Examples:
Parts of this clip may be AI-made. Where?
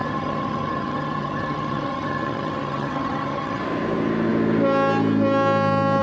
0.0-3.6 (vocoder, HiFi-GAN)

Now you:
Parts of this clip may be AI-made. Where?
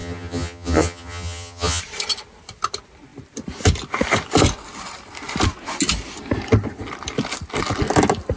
0.0-1.8 (vocoder, HiFi-GAN)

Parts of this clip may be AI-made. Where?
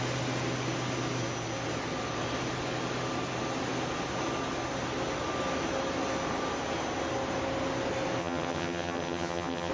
8.2-9.7 (vocoder, HiFi-GAN)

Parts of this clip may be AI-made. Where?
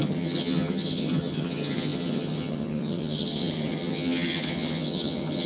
0.0-5.5 (vocoder, HiFi-GAN)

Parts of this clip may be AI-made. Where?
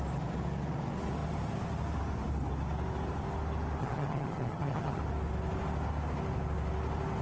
3.8-5.0 (vocoder, HiFi-GAN)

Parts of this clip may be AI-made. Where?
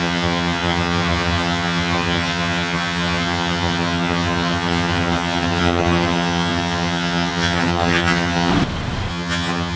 0.0-8.5 (vocoder, HiFi-GAN); 9.1-9.8